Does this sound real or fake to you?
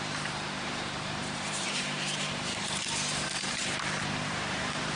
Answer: fake